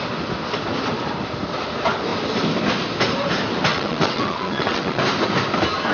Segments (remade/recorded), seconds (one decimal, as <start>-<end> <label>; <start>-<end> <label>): 0.0-3.7 recorded; 3.7-5.0 remade; 5.0-5.9 recorded